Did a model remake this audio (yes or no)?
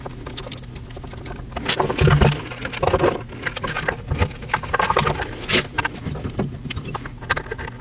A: no